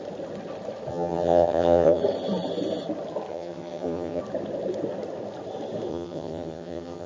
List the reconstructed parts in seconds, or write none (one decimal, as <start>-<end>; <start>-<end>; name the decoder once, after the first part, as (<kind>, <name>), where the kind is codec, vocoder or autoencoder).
0.9-2.0 (vocoder, HiFi-GAN); 3.3-4.2; 5.9-7.1